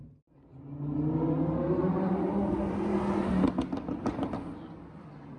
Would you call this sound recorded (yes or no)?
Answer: yes